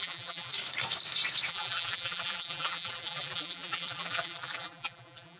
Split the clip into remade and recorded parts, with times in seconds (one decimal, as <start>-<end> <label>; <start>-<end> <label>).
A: 0.0-0.5 remade; 0.5-1.5 recorded; 1.5-5.4 remade